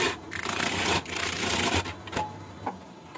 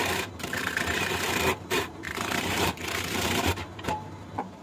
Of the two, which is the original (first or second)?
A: first